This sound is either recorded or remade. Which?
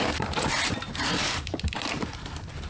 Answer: remade